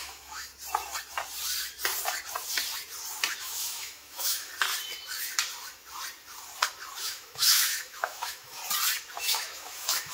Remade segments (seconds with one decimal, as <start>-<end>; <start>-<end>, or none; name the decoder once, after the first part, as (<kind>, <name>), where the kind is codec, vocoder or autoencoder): 0.0-0.5 (autoencoder, DAC-VAE); 3.4-4.5; 7.0-8.6; 9.2-10.1